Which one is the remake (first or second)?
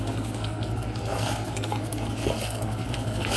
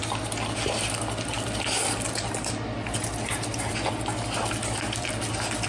first